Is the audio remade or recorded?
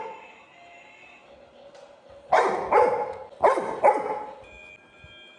recorded